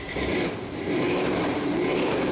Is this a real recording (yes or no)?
no